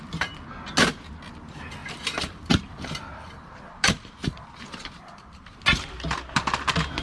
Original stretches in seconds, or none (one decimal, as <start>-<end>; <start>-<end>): 0.0-1.8; 5.6-7.0

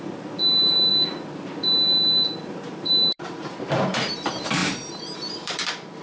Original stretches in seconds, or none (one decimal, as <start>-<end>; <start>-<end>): none

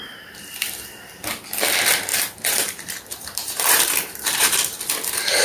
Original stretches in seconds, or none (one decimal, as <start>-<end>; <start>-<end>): 0.8-2.1; 4.8-5.4

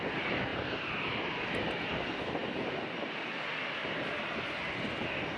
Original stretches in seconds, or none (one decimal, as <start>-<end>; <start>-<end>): 0.0-5.4

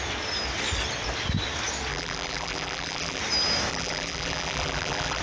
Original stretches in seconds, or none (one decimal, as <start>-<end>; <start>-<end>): 0.0-1.9; 3.2-3.7

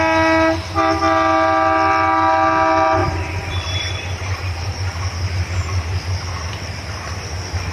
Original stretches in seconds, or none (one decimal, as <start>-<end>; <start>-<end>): 0.0-3.0; 5.3-7.7

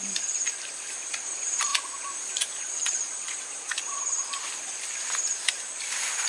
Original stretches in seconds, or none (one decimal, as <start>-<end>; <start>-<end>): none

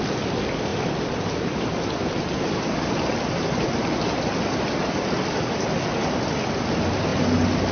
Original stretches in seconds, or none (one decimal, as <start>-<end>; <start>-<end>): 0.0-0.7; 5.3-7.7